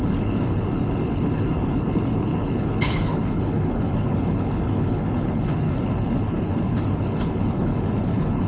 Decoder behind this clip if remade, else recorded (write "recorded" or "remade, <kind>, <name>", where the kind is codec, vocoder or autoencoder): remade, codec, HILCodec